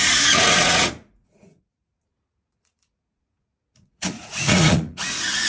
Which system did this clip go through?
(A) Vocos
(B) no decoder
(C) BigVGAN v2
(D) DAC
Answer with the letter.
A